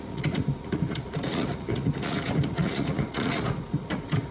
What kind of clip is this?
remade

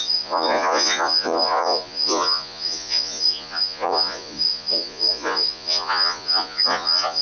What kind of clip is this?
remade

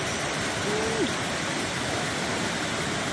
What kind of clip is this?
recorded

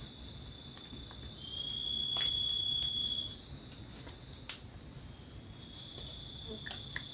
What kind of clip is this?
recorded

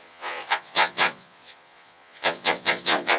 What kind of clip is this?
remade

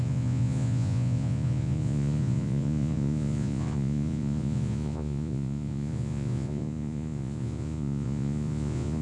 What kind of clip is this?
remade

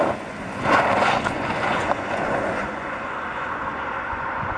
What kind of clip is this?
remade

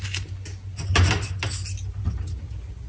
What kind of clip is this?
recorded